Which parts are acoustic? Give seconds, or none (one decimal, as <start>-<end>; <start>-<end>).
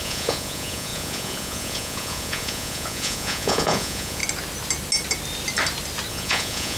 4.2-6.1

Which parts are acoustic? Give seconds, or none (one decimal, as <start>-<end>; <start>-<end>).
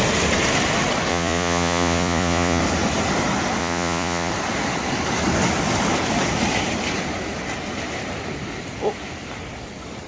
0.0-1.1; 2.6-3.6; 4.3-10.1